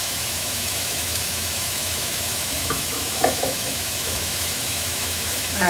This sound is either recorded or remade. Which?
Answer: remade